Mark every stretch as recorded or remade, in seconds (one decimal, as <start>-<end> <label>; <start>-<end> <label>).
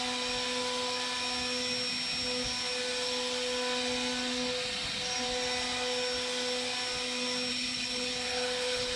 0.0-7.5 recorded; 7.5-9.0 remade